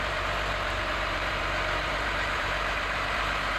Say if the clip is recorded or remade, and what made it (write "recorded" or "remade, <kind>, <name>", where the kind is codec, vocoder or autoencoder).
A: remade, vocoder, BigVGAN v2